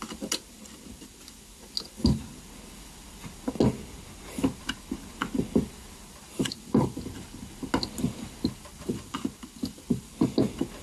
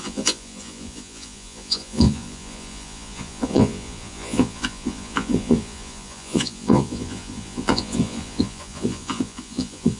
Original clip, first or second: first